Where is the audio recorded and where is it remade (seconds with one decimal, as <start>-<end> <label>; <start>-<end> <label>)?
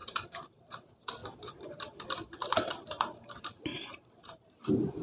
0.0-0.5 recorded; 0.5-5.0 remade